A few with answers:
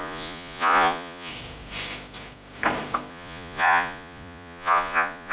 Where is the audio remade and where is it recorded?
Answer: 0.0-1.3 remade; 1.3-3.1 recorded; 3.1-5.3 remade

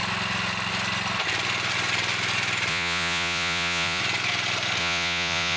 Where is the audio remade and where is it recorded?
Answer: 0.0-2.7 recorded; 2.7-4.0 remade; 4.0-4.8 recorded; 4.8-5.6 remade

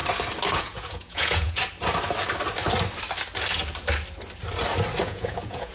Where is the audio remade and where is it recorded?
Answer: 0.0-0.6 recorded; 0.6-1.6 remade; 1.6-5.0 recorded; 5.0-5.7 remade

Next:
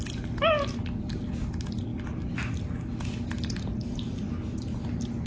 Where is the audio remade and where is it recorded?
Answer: 0.0-5.3 recorded

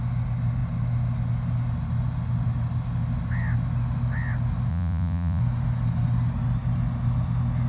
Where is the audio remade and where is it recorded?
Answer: 0.0-4.7 recorded; 4.7-5.4 remade; 5.4-7.7 recorded

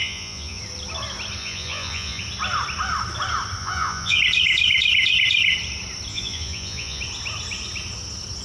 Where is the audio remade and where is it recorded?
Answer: 0.0-0.6 remade; 0.6-1.4 recorded; 1.4-2.2 remade; 2.2-3.6 recorded; 3.6-4.2 remade; 4.2-6.1 recorded; 6.1-7.0 remade; 7.0-8.4 recorded

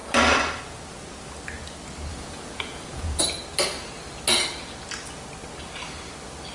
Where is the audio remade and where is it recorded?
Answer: 0.0-2.1 recorded; 2.1-3.2 remade; 3.2-6.5 recorded

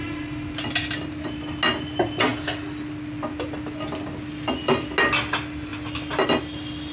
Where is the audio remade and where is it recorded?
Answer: 0.0-6.9 recorded